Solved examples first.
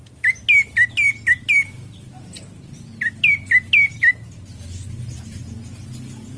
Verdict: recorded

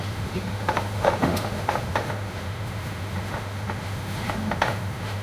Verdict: remade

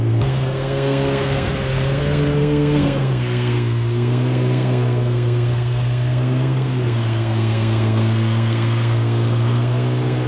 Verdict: remade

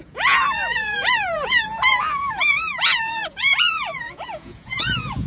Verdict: remade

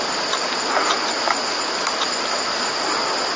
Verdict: recorded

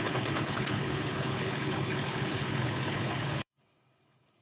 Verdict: remade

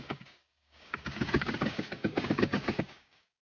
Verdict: remade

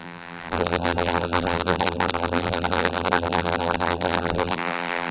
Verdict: remade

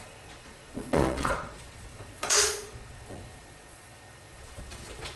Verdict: remade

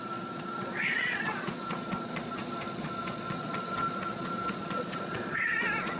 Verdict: remade